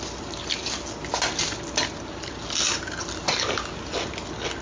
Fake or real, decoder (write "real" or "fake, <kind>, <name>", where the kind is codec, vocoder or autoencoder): real